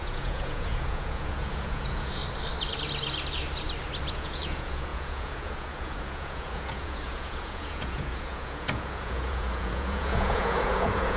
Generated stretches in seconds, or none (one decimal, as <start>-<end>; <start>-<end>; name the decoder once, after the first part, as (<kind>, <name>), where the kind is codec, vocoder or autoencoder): 0.0-2.2 (vocoder, Vocos); 4.1-11.2